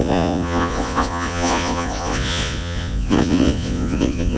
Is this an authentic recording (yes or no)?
no